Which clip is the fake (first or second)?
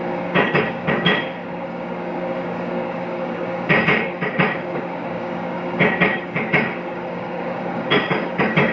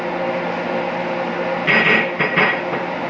first